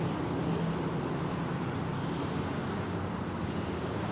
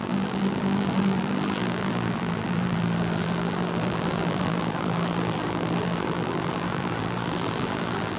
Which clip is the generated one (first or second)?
second